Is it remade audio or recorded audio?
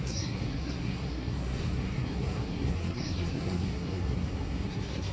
remade